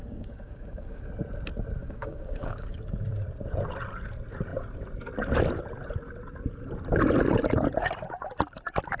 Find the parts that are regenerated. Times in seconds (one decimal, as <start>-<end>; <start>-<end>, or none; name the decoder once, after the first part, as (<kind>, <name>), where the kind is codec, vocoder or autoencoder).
0.0-1.1 (codec, DAC); 1.8-3.0